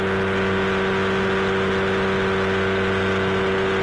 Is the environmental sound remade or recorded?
recorded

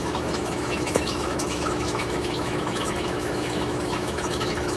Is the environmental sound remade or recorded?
remade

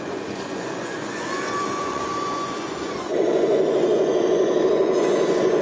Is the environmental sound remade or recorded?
remade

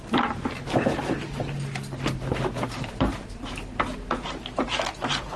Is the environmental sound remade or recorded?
recorded